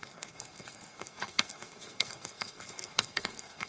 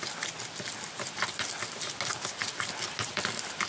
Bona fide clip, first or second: second